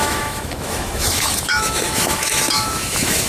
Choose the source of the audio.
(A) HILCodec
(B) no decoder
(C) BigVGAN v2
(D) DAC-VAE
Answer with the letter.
D